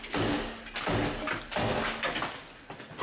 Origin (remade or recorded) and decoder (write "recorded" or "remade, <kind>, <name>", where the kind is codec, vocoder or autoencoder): recorded